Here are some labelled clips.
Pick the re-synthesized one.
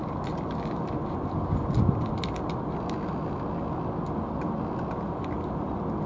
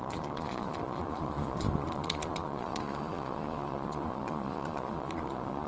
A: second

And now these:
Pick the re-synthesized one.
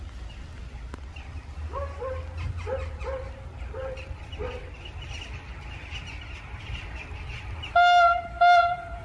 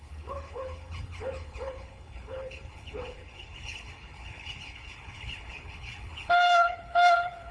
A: second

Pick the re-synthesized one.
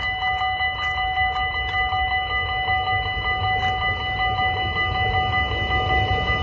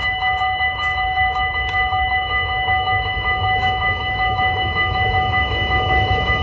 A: second